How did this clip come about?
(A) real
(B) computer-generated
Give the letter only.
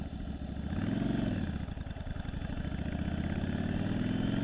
A